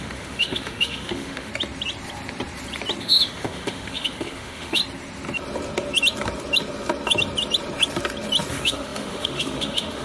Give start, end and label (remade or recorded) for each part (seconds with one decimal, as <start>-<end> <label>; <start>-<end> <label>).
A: 0.0-1.5 remade; 1.5-3.0 recorded; 3.0-4.8 remade; 4.8-8.5 recorded; 8.5-10.0 remade